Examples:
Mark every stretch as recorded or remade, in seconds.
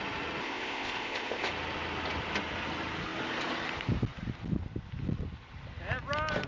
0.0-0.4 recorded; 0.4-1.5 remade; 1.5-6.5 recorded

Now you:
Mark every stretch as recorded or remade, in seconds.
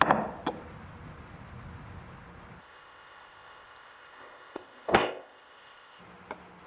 0.0-2.6 recorded; 2.6-6.0 remade; 6.0-6.7 recorded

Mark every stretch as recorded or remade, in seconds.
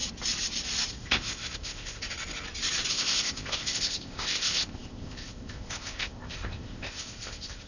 0.0-0.9 recorded; 0.9-2.0 remade; 2.0-2.9 recorded; 2.9-7.7 remade